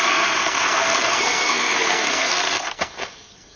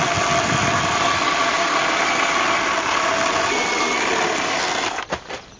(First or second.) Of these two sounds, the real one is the second